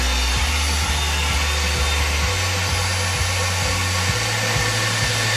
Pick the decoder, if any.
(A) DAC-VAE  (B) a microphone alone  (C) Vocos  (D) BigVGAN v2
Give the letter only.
B